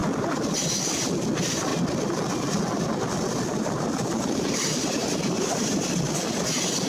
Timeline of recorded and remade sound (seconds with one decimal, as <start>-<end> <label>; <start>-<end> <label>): 0.0-5.0 recorded; 5.0-6.0 remade; 6.0-6.9 recorded